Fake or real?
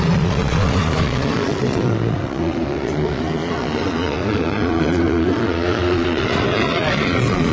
fake